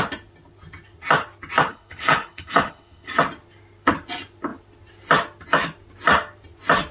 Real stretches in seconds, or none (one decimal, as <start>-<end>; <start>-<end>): 0.0-1.7; 3.1-6.9